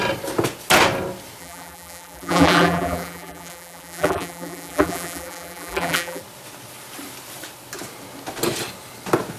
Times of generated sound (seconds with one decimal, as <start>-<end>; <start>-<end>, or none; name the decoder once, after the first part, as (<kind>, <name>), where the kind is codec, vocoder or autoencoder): 1.4-6.2 (vocoder, BigVGAN v2)